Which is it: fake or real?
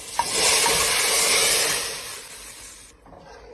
real